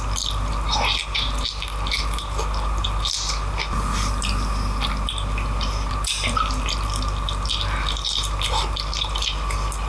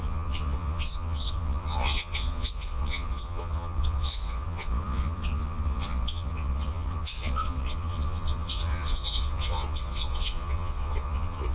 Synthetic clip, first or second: second